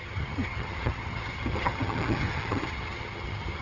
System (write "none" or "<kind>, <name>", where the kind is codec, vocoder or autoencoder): vocoder, HiFi-GAN